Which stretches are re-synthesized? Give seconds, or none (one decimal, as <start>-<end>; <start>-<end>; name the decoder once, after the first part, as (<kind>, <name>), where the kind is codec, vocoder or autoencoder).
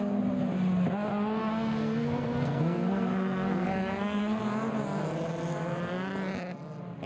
1.4-4.4 (codec, SNAC)